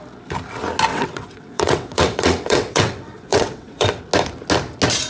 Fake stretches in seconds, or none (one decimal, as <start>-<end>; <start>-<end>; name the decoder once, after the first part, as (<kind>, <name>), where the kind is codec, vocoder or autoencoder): 0.9-4.0 (vocoder, WaveNeXt)